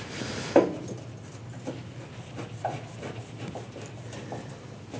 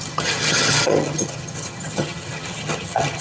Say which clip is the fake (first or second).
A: second